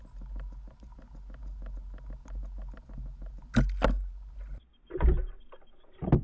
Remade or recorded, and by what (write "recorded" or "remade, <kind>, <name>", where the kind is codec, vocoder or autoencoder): recorded